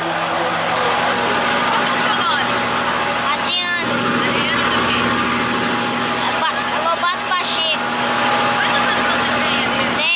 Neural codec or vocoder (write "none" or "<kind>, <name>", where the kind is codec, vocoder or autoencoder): none